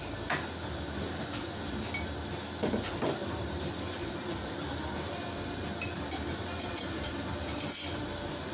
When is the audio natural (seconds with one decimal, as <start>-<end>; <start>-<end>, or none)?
0.0-3.2